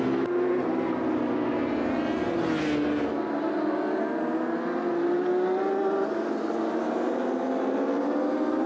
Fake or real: real